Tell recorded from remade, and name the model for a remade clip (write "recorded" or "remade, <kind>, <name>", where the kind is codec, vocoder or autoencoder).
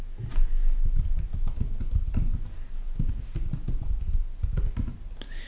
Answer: recorded